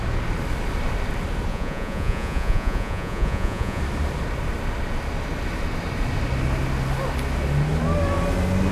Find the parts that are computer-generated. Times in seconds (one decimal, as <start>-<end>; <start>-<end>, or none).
1.5-3.8